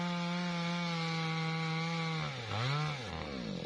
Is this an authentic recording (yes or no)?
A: yes